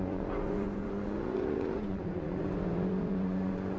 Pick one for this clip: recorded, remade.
remade